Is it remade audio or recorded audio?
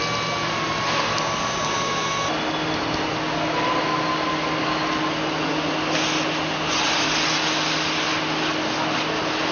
recorded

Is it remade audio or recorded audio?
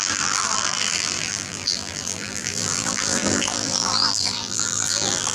remade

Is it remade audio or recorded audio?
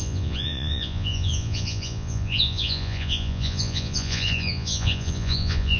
remade